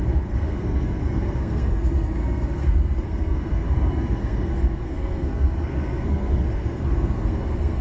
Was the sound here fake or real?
fake